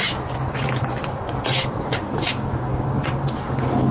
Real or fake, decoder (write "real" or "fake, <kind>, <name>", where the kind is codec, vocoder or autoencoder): real